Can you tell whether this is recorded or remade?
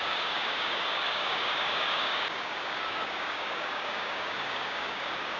remade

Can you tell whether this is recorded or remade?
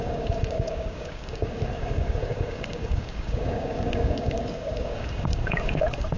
remade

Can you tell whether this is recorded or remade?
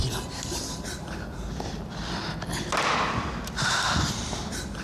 recorded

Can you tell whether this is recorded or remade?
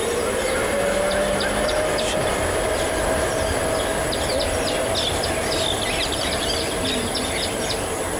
recorded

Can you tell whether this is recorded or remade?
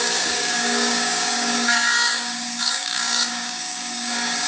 remade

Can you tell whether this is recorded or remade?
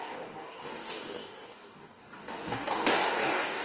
remade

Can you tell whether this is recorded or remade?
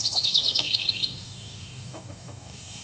remade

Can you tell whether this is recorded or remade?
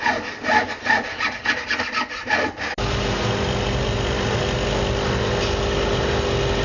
recorded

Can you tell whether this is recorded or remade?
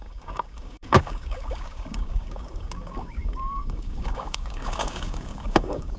remade